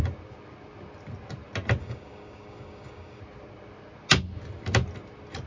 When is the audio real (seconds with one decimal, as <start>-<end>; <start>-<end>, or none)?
0.0-1.8; 3.2-5.5